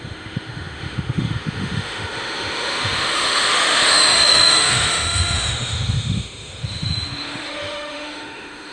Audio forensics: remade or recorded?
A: remade